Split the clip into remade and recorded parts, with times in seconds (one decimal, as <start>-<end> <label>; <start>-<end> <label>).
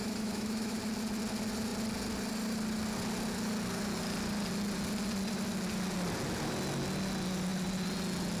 0.0-0.8 remade; 0.8-8.4 recorded